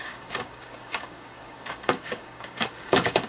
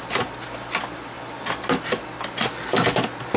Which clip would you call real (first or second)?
second